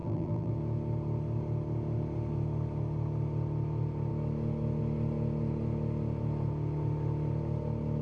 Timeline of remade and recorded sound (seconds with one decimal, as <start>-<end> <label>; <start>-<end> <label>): 0.0-0.5 remade; 0.5-8.0 recorded